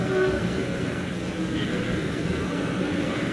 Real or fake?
fake